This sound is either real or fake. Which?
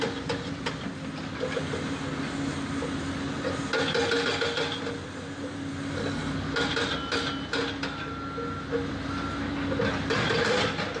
real